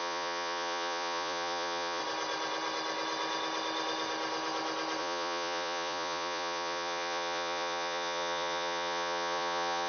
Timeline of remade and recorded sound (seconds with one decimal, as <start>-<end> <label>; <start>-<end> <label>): 0.0-2.0 remade; 2.0-5.0 recorded; 5.0-9.9 remade